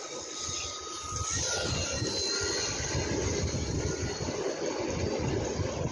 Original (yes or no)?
yes